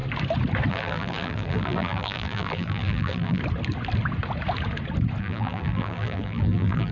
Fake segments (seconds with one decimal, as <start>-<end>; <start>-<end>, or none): 0.7-3.4; 5.2-6.9